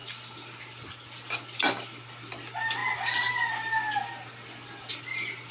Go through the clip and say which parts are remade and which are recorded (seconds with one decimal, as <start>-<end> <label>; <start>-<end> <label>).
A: 0.0-5.5 recorded